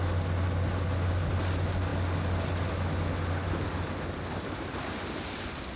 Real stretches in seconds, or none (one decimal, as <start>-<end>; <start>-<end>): 0.0-5.8